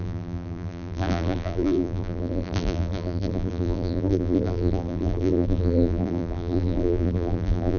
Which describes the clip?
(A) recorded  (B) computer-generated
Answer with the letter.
B